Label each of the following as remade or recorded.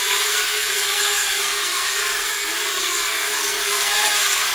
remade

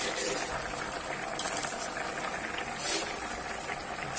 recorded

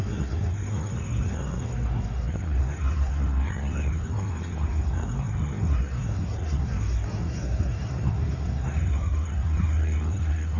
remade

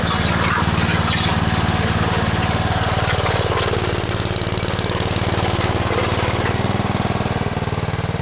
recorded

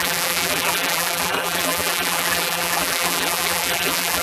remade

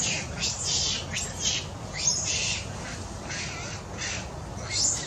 recorded